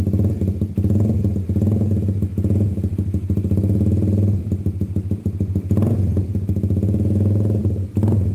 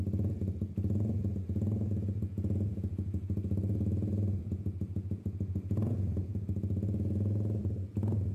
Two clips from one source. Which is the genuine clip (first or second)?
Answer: first